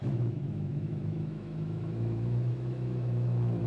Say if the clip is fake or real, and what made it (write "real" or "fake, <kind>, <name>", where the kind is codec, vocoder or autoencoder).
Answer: fake, autoencoder, DAC-VAE